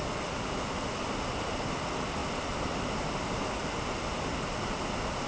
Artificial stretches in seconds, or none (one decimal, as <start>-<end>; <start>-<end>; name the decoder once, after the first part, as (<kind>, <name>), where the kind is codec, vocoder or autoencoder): 2.2-3.7 (vocoder, BigVGAN v2)